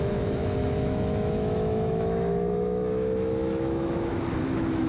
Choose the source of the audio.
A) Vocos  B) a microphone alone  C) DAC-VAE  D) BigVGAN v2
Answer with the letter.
C